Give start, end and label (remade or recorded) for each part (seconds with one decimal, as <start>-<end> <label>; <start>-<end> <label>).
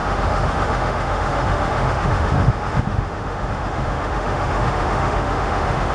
0.0-5.9 remade